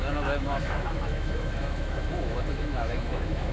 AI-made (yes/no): yes